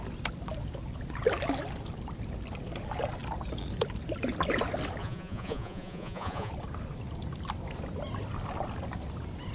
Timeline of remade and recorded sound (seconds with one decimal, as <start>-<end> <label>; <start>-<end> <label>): 0.0-5.0 recorded; 5.0-6.5 remade; 6.5-9.5 recorded